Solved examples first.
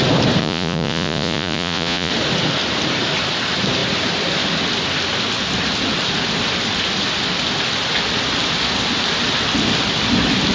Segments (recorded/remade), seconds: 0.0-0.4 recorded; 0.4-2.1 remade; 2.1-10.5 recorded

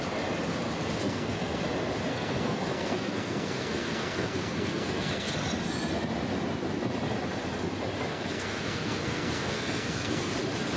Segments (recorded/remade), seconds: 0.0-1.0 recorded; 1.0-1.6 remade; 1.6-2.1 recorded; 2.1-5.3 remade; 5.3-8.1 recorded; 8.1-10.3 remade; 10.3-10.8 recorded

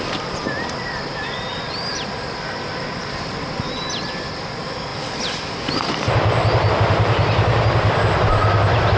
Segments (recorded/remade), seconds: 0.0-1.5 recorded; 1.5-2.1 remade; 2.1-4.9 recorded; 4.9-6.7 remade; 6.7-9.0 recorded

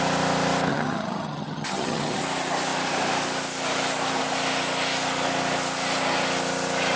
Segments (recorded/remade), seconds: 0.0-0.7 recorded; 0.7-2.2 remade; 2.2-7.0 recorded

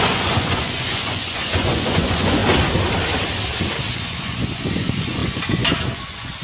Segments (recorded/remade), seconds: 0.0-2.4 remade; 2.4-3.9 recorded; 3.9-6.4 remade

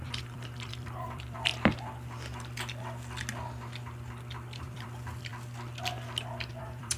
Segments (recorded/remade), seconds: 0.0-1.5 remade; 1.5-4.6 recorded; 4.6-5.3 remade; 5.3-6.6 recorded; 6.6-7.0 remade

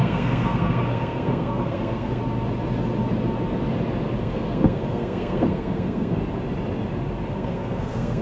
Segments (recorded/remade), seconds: 0.0-2.2 remade; 2.2-4.2 recorded; 4.2-6.2 remade; 6.2-7.3 recorded; 7.3-8.2 remade